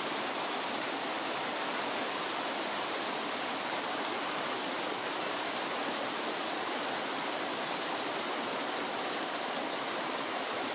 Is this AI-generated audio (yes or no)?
yes